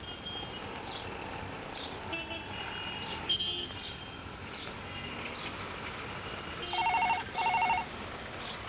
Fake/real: real